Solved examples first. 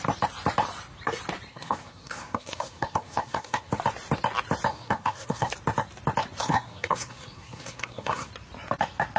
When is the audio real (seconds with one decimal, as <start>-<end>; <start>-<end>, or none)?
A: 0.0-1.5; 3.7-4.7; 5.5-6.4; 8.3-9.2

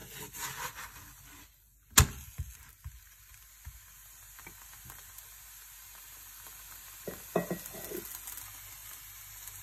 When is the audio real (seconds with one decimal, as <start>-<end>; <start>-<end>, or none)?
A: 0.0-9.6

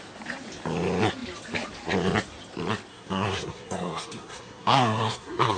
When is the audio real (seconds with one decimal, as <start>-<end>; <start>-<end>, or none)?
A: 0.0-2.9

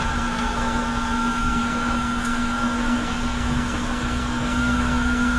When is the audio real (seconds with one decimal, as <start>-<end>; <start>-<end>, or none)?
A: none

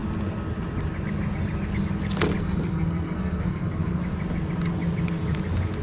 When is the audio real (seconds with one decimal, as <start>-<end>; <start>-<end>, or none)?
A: 0.0-2.4; 4.0-5.8